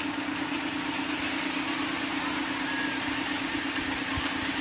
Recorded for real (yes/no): yes